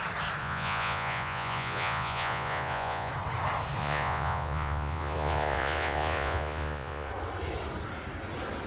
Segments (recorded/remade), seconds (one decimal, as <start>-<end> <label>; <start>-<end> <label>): 0.0-0.4 recorded; 0.4-3.1 remade; 3.1-3.8 recorded; 3.8-7.1 remade; 7.1-8.7 recorded